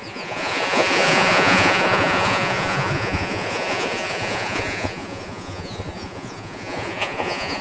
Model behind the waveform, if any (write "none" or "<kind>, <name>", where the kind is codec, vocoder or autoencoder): vocoder, Vocos